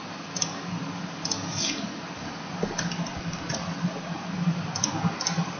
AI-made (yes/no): no